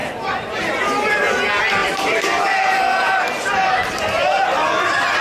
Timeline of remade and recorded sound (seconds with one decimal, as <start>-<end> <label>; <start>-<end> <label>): 0.0-0.7 remade; 0.7-1.8 recorded; 1.8-5.2 remade